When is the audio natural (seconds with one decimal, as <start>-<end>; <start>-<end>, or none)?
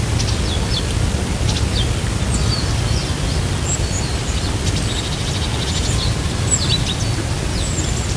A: 0.0-8.2